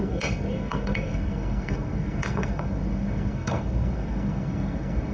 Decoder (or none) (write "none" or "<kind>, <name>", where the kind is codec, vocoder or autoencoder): codec, SNAC